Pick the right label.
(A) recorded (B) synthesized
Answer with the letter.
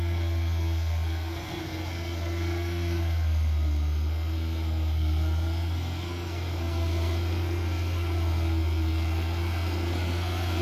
B